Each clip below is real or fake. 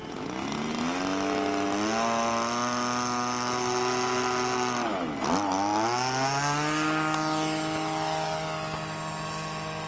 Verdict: real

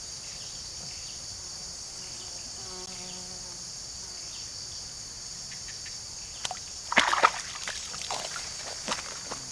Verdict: real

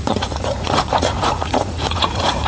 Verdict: fake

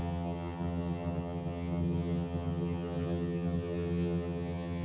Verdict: fake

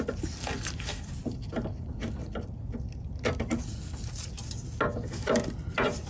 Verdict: real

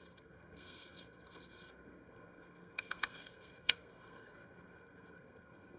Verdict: fake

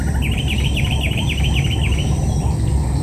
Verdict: real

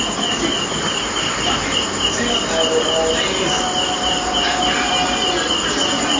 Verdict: real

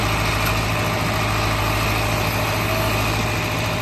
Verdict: real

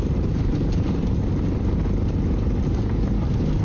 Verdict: real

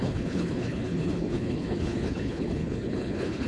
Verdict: fake